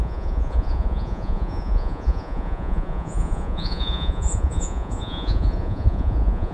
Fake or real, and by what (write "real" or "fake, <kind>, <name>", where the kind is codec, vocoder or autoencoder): fake, vocoder, Vocos